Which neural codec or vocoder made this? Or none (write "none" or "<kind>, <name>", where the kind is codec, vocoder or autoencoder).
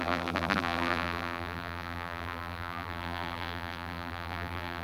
vocoder, BigVGAN v2